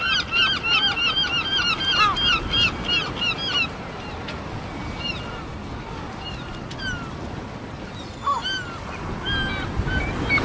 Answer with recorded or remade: recorded